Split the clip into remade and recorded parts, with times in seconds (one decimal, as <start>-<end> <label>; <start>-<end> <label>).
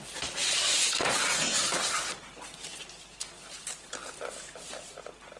0.0-5.4 recorded